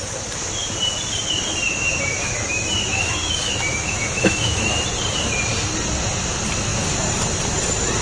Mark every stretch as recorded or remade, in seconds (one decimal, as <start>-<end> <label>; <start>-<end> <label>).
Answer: 0.0-2.1 recorded; 2.1-4.7 remade; 4.7-8.0 recorded